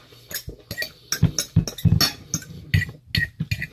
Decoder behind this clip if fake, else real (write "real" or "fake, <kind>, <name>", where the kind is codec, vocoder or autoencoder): real